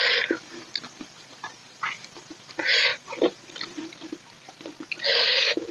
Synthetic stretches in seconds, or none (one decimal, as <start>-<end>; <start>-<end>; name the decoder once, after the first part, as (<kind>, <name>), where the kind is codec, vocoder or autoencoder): none